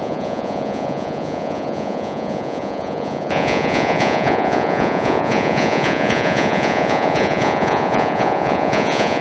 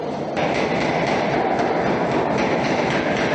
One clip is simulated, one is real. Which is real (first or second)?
second